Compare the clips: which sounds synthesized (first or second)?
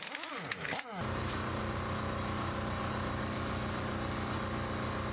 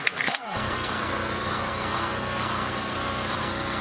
second